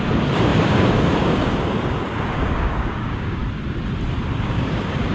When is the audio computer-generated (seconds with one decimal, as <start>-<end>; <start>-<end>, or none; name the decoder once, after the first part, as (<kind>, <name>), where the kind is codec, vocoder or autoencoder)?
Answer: 0.0-3.4 (codec, DAC); 4.4-5.1